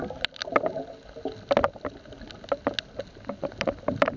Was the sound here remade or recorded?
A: recorded